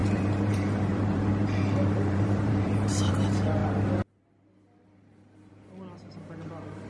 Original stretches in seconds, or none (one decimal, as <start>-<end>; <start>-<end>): 3.1-6.9